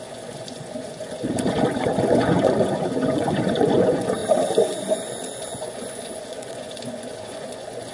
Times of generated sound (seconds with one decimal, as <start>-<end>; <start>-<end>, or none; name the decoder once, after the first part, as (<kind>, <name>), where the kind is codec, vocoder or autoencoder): 0.0-4.2 (vocoder, Vocos); 4.9-7.9